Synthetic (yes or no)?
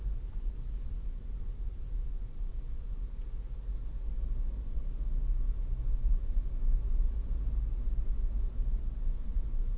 no